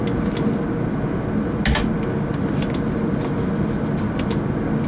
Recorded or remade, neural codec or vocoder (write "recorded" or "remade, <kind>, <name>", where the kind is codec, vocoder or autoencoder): recorded